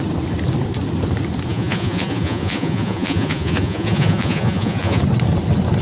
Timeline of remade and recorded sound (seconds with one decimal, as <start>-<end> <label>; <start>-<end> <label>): 0.0-1.5 recorded; 1.5-5.0 remade; 5.0-5.8 recorded